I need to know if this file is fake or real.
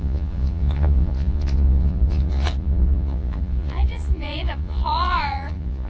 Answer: fake